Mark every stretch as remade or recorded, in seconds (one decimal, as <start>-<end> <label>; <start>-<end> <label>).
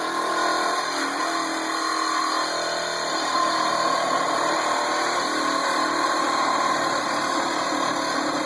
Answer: 0.0-1.9 remade; 1.9-3.1 recorded; 3.1-5.8 remade; 5.8-6.9 recorded; 6.9-8.5 remade